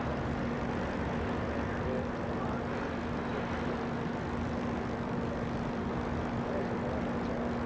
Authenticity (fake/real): real